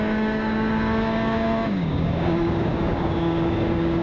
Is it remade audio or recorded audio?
remade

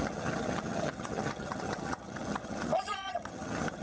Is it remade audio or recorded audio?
remade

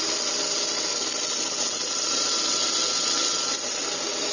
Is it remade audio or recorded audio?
recorded